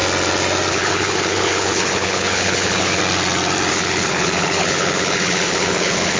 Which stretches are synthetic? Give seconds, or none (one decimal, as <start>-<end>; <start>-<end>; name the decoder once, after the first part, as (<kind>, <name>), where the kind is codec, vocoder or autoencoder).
0.7-3.0 (codec, HILCodec); 3.7-6.2